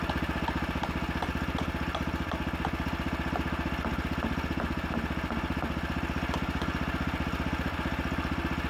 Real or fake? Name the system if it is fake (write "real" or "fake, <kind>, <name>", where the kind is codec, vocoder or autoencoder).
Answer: real